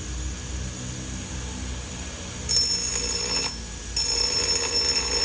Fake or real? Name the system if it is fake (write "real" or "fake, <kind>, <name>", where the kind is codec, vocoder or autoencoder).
real